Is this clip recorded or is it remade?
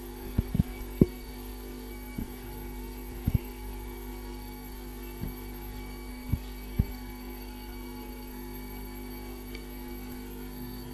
remade